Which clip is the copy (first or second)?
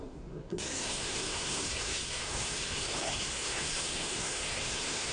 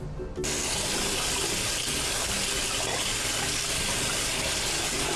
first